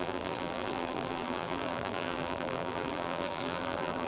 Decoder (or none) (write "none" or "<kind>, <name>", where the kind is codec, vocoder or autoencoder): vocoder, BigVGAN v2